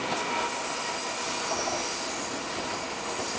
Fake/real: real